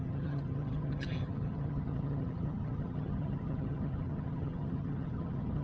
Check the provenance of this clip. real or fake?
fake